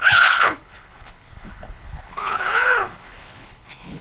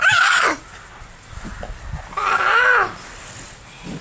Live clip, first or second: second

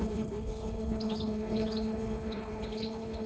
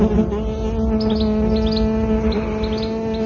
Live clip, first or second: second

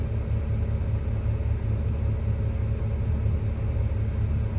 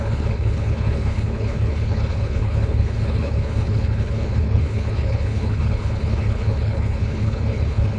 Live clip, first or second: first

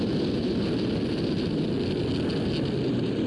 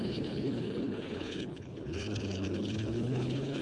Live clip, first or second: first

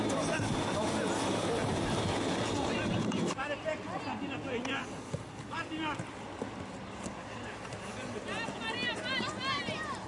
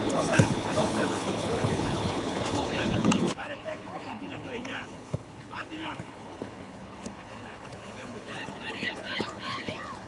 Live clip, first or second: first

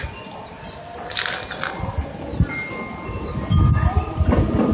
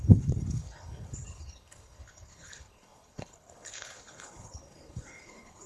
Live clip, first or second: first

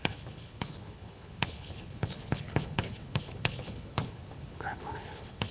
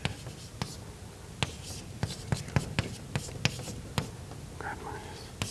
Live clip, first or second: second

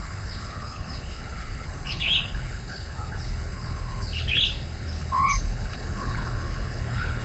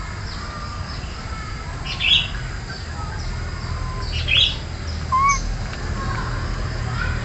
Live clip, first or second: second